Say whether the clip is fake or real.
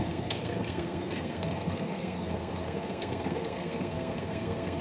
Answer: fake